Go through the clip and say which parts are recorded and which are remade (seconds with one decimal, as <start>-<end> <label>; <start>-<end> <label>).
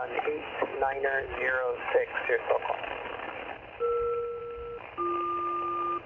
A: 0.0-6.1 recorded